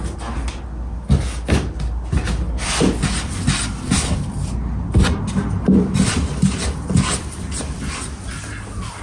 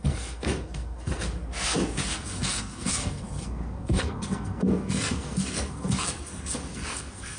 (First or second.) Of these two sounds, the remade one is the second